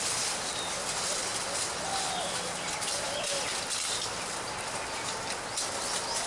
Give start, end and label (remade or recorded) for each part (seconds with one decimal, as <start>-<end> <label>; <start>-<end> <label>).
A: 0.0-6.3 recorded